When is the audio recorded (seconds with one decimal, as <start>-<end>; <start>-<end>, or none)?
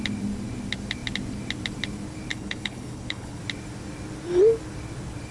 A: 0.0-2.3; 3.4-5.3